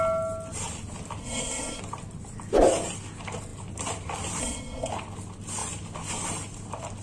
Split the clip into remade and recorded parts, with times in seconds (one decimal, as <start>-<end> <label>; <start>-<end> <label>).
0.0-1.2 recorded; 1.2-1.8 remade; 1.8-4.4 recorded; 4.4-4.9 remade; 4.9-7.0 recorded